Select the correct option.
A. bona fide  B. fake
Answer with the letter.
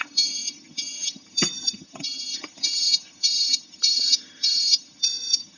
B